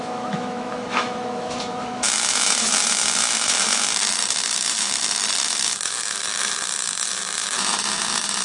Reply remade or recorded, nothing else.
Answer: remade